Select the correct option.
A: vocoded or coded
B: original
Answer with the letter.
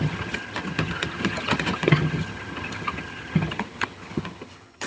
A